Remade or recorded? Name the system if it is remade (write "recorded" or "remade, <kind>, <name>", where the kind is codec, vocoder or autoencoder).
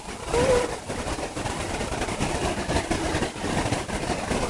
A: remade, vocoder, BigVGAN v2